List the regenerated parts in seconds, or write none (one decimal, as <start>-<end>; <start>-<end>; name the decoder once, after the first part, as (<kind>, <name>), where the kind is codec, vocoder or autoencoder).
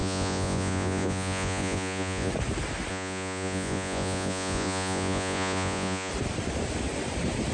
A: 0.0-2.3 (vocoder, Vocos); 2.9-6.1